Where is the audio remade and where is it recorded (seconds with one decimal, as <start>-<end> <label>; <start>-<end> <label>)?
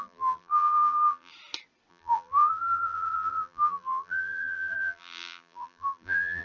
0.0-1.3 remade; 1.3-1.9 recorded; 1.9-6.4 remade